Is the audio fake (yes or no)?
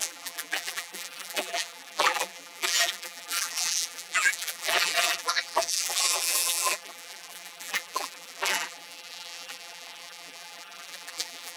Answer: yes